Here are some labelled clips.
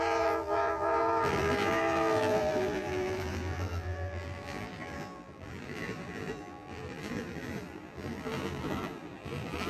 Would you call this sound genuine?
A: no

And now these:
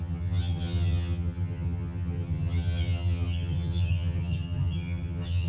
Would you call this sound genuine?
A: no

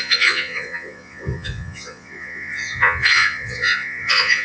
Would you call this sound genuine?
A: no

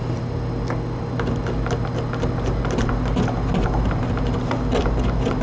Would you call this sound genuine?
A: yes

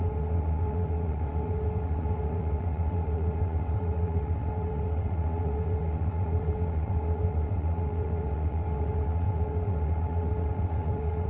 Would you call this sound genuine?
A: no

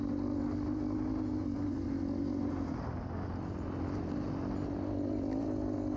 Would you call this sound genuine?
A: yes